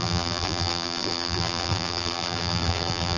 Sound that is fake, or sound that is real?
fake